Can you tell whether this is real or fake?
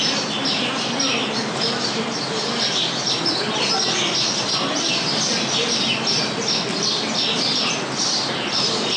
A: real